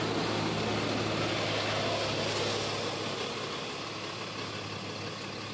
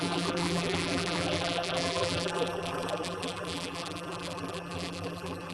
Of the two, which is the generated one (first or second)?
second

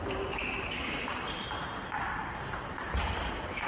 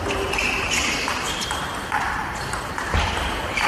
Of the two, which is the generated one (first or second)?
second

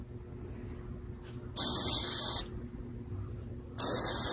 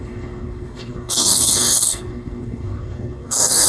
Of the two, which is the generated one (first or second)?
second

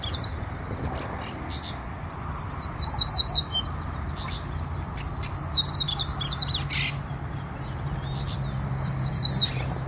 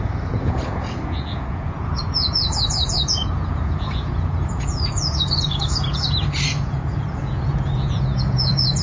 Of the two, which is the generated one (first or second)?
second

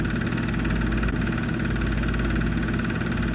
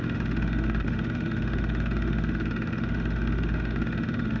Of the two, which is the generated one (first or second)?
second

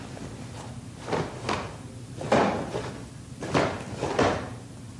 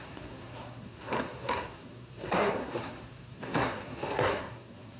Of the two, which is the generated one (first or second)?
second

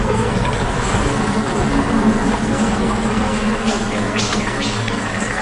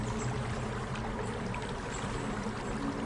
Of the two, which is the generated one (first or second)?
first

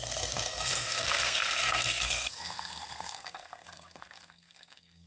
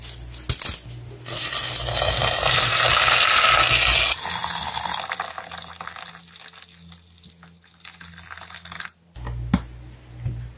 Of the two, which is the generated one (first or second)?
first